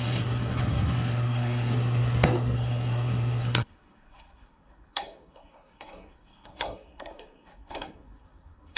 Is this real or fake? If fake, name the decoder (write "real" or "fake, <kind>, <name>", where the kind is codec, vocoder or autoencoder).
fake, codec, SNAC